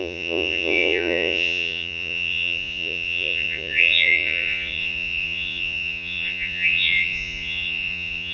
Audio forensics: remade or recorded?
remade